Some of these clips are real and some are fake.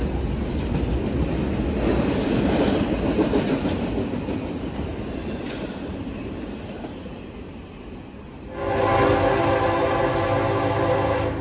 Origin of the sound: real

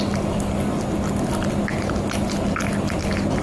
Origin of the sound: real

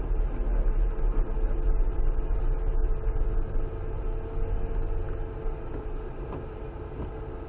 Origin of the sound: real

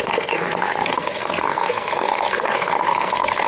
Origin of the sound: fake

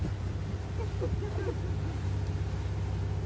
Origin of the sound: fake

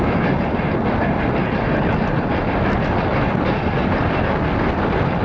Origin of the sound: real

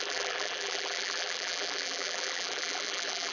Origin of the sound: fake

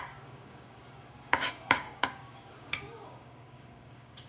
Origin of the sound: fake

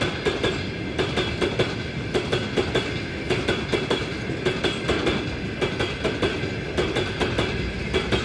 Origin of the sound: real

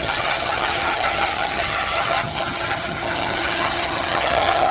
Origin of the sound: fake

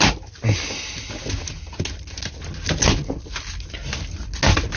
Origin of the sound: real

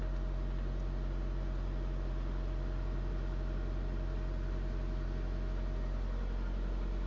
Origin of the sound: real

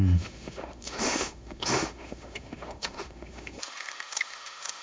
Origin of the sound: fake